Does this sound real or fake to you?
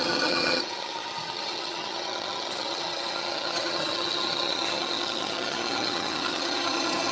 fake